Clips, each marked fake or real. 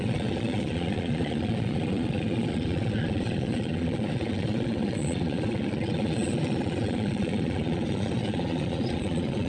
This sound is fake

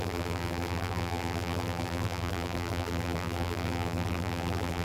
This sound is fake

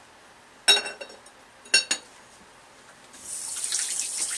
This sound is real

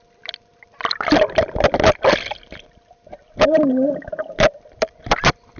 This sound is real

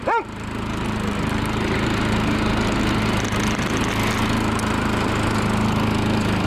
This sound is real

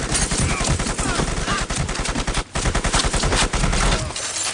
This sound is real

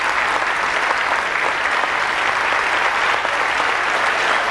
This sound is real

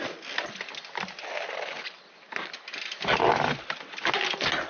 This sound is real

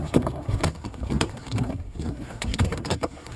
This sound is fake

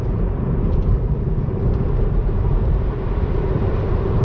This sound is fake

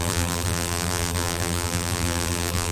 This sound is fake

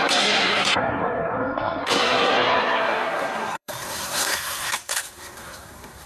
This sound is fake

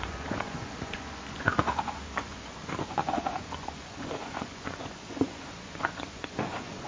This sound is fake